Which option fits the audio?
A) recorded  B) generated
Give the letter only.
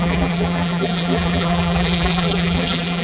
B